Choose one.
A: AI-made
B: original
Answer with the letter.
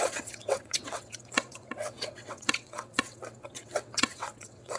A